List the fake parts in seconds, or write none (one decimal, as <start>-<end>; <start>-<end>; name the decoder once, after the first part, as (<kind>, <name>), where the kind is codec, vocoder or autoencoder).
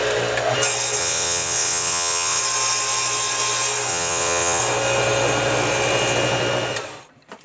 1.0-2.4 (vocoder, WaveNeXt); 3.9-4.6